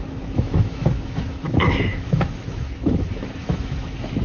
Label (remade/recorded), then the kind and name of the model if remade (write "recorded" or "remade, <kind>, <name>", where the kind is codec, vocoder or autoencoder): remade, autoencoder, DAC-VAE